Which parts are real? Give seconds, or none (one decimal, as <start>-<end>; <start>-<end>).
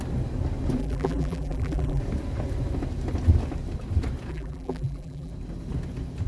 0.0-0.8; 2.0-4.3; 5.3-6.3